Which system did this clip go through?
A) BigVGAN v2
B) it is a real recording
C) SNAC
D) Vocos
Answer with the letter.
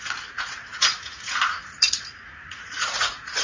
D